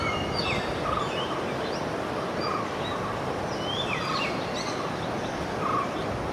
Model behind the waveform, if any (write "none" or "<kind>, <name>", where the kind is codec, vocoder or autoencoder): none